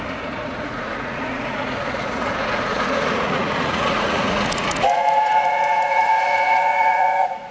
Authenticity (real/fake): fake